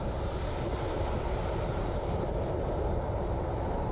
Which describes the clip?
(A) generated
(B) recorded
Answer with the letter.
A